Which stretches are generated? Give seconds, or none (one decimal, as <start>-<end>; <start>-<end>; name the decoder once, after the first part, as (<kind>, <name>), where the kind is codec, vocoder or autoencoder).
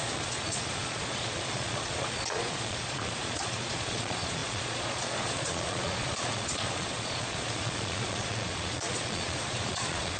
0.0-10.2 (vocoder, Vocos)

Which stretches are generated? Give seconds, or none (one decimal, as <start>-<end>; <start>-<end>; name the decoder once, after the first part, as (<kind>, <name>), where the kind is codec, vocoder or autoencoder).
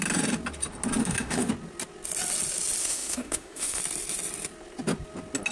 1.0-1.5 (autoencoder, DAC-VAE); 2.8-3.8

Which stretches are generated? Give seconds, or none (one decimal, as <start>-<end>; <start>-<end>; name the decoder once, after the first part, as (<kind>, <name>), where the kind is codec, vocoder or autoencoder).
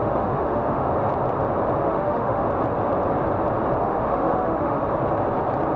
0.0-0.9 (autoencoder, DAC-VAE); 1.8-2.4; 3.8-4.8